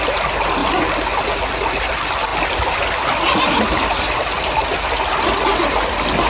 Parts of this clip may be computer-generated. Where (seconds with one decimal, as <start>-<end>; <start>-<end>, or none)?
none